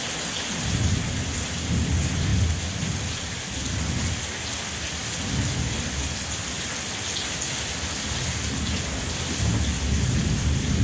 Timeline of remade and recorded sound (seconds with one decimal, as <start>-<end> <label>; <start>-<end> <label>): 0.0-10.8 recorded